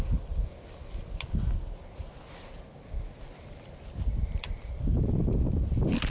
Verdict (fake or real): real